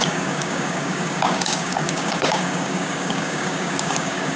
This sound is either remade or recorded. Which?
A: remade